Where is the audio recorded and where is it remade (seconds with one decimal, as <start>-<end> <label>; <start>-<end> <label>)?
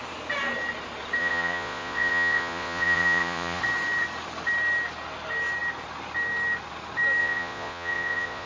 0.0-1.2 recorded; 1.2-3.6 remade; 3.6-7.2 recorded; 7.2-8.5 remade